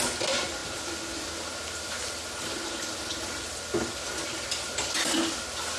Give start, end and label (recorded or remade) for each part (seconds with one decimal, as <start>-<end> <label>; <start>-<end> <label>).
0.0-5.8 recorded